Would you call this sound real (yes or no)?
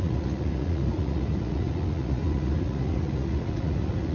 no